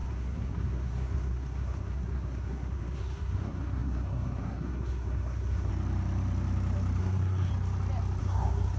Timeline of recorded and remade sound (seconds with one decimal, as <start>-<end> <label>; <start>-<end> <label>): 0.0-5.7 remade; 5.7-7.0 recorded; 7.0-7.5 remade; 7.5-8.2 recorded; 8.2-8.8 remade